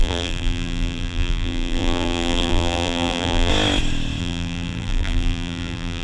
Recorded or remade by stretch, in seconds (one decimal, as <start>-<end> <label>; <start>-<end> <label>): 0.0-3.5 remade; 3.5-4.2 recorded; 4.2-6.0 remade